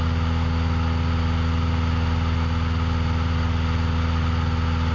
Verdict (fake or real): real